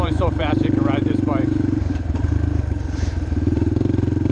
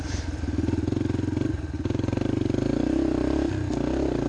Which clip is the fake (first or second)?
first